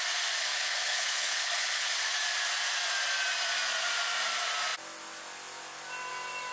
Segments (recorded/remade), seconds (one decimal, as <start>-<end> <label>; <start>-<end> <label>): 0.0-0.4 recorded; 0.4-1.9 remade; 1.9-6.5 recorded